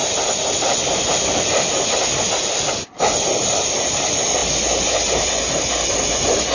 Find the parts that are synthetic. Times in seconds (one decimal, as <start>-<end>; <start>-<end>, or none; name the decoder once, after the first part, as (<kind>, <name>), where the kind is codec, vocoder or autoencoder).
3.9-6.5 (vocoder, BigVGAN v2)